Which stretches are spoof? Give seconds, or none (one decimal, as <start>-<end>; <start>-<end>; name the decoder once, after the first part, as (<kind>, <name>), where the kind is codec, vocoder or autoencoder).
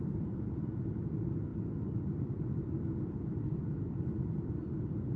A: none